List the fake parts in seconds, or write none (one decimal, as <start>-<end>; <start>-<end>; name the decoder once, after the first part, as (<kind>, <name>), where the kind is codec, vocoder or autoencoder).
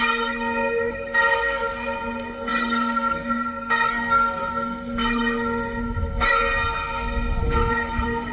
0.0-6.4 (codec, SNAC); 7.4-8.3